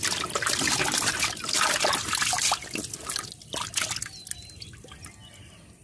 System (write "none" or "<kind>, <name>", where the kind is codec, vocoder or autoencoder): none